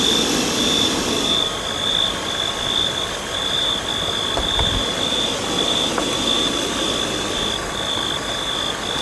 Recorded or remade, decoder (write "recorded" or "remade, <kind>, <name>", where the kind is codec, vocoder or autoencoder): recorded